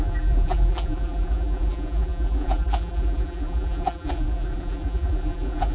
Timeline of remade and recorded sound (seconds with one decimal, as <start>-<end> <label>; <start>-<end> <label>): 0.0-5.7 remade